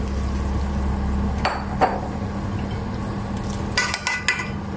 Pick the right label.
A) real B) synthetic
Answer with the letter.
A